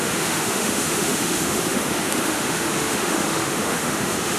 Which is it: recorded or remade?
remade